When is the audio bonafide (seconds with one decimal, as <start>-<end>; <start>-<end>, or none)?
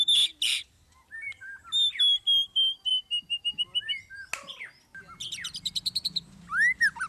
0.0-7.1